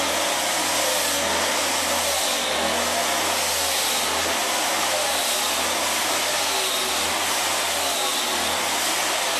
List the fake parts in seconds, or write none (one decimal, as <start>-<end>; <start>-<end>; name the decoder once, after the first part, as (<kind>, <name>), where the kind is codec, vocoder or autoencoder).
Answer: none